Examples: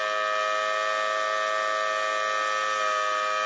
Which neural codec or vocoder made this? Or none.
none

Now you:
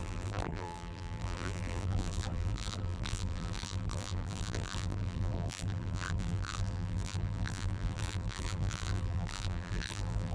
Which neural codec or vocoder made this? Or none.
vocoder, BigVGAN v2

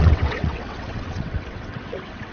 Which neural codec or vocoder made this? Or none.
vocoder, WaveNeXt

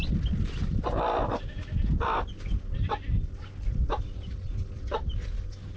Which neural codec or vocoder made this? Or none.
none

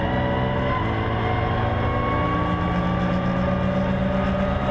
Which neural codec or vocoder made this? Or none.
none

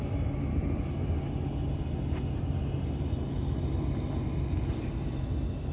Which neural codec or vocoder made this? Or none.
none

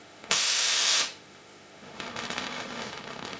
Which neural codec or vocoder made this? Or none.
autoencoder, DAC-VAE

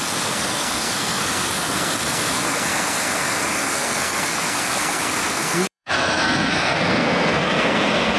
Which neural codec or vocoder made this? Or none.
codec, SNAC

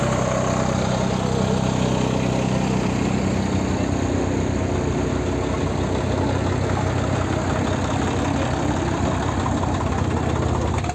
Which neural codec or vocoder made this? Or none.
none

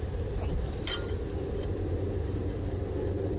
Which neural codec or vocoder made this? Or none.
none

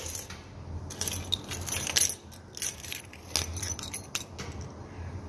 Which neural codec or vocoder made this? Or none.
none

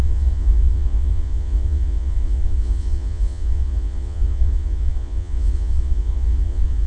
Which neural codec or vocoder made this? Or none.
vocoder, Vocos